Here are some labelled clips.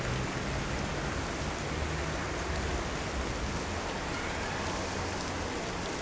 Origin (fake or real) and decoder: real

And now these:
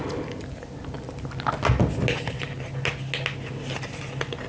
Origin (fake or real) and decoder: real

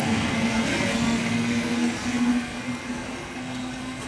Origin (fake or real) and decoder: fake, codec, SNAC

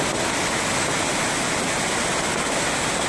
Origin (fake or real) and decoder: real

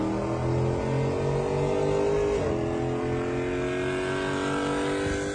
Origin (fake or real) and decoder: real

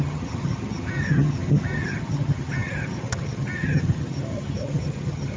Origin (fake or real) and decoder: fake, vocoder, HiFi-GAN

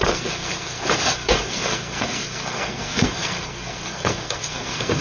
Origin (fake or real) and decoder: fake, codec, SNAC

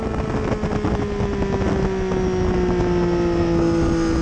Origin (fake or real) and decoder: real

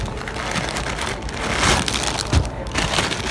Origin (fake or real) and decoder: real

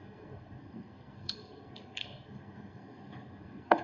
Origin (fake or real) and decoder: fake, codec, SNAC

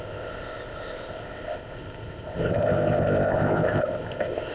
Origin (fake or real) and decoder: fake, codec, ZipCodec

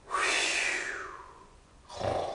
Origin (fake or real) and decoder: fake, vocoder, Vocos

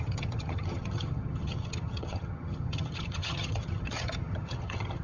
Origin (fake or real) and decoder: fake, vocoder, HiFi-GAN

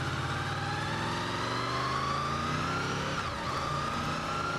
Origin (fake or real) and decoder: real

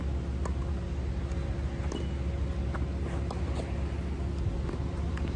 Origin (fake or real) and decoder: real